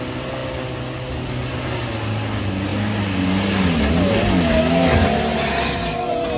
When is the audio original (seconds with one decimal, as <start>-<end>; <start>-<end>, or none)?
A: 0.0-6.4